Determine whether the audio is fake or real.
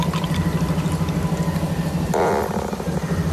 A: real